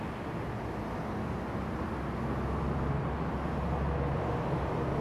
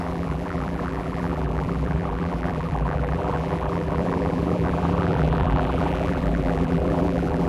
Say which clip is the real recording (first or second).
first